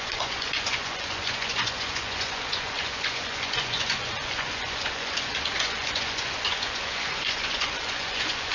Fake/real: fake